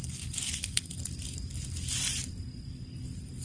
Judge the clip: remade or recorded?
recorded